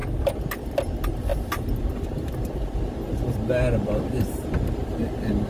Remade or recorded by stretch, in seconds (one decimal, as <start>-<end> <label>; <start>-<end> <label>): 0.0-1.3 recorded; 1.3-2.8 remade; 2.8-5.5 recorded

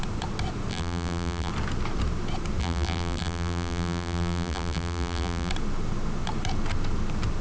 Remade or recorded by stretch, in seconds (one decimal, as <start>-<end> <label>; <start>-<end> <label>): 0.0-0.7 recorded; 0.7-1.5 remade; 1.5-2.6 recorded; 2.6-5.5 remade; 5.5-7.4 recorded

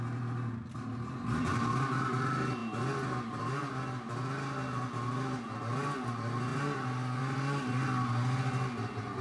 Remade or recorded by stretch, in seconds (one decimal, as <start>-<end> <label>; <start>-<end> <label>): 0.0-9.2 recorded

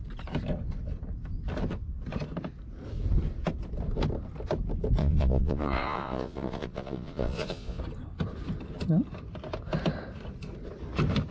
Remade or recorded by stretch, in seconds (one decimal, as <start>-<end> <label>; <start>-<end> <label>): 0.0-5.0 recorded; 5.0-7.8 remade; 7.8-11.3 recorded

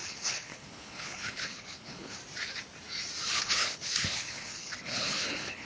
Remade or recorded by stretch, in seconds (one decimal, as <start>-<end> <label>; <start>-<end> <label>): 0.0-2.2 remade; 2.2-3.4 recorded; 3.4-5.6 remade

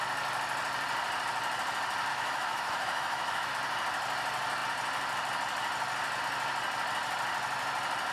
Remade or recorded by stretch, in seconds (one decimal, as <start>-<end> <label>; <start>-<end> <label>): 0.0-2.1 recorded; 2.1-3.5 remade; 3.5-8.1 recorded